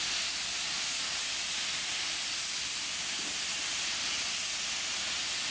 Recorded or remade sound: recorded